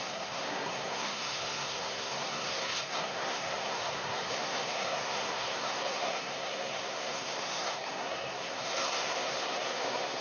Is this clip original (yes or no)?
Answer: no